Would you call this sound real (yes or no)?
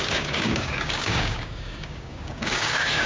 no